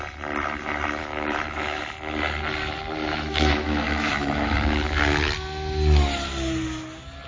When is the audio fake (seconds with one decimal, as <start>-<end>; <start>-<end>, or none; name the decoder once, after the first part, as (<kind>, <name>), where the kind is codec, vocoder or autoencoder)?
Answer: 1.0-1.8 (autoencoder, DAC-VAE); 3.1-4.8